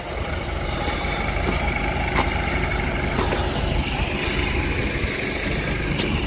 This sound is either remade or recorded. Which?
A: remade